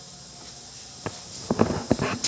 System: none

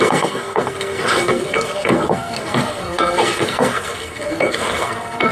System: codec, SNAC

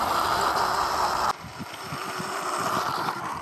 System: none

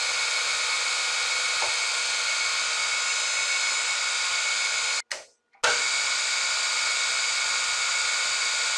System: none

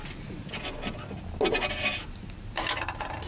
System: none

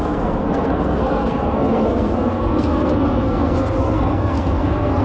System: codec, SNAC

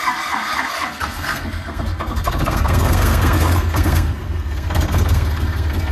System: codec, SNAC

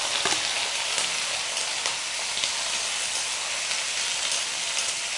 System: none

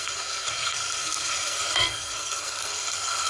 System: codec, SNAC